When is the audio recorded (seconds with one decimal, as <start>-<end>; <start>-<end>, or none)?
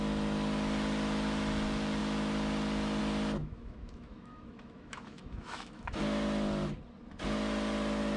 0.0-3.4; 6.0-8.2